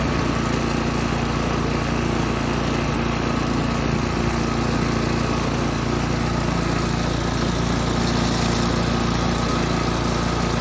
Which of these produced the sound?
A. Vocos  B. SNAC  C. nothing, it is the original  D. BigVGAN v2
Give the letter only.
C